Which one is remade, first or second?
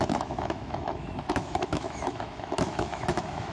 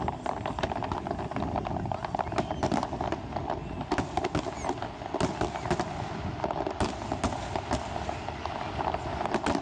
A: first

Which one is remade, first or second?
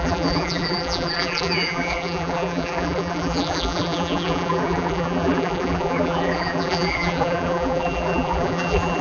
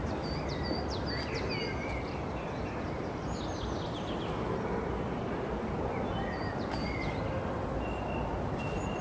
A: first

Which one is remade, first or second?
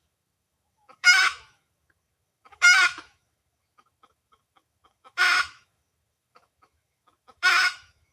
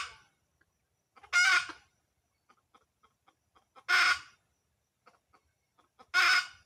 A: first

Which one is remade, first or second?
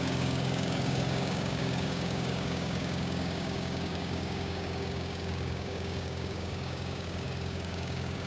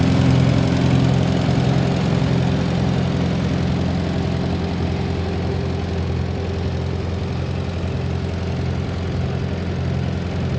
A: first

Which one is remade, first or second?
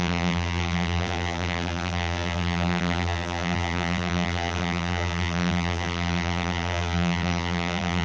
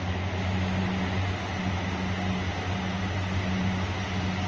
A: first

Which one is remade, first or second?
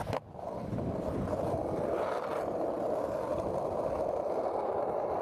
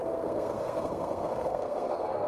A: second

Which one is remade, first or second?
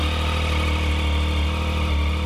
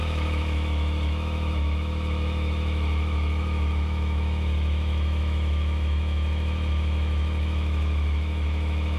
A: second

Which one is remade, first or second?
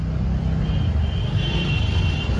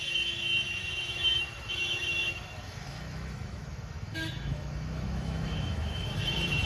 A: second